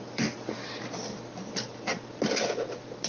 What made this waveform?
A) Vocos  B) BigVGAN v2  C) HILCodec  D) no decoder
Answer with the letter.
B